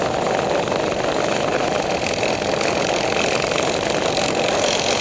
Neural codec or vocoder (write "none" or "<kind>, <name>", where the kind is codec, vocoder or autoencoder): none